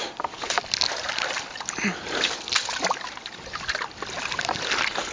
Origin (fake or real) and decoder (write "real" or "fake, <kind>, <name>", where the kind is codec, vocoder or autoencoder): real